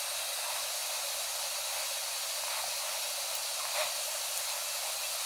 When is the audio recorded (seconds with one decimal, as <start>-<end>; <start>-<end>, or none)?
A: 0.0-5.3